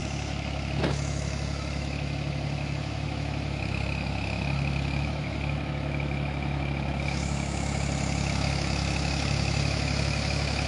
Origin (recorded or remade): remade